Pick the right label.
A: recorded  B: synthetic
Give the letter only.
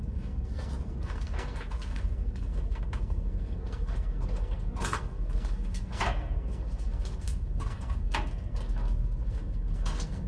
B